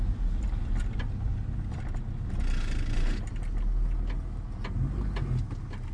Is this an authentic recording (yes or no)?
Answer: yes